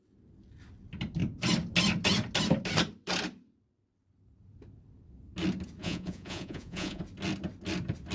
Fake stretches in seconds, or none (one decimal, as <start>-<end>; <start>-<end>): 5.8-7.0